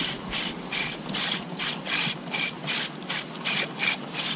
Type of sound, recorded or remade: recorded